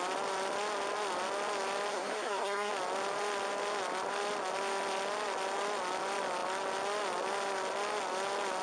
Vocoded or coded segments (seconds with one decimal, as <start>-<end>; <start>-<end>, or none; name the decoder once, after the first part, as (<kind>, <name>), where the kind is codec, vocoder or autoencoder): 1.9-2.7 (codec, SNAC)